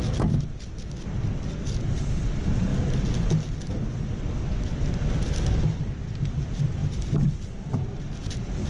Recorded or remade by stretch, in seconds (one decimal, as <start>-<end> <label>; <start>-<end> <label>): 0.0-8.7 recorded